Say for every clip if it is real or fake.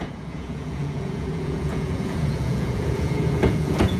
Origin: fake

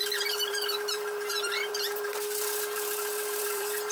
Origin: fake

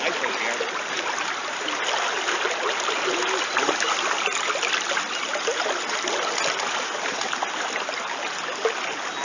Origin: real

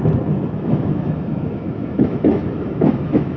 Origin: fake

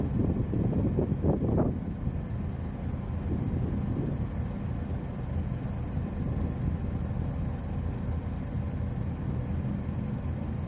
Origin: real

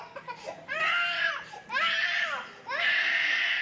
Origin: real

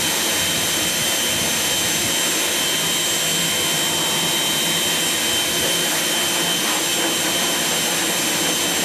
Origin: real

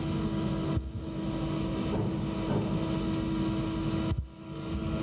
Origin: real